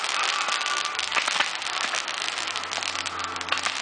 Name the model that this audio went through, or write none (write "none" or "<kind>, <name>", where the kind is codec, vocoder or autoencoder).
none